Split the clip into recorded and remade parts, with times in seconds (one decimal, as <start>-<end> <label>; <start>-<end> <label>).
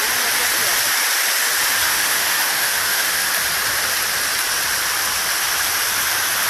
0.0-1.9 recorded; 1.9-3.2 remade; 3.2-6.5 recorded